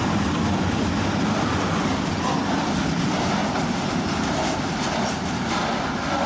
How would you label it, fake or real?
real